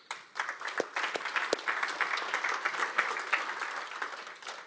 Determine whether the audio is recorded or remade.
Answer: recorded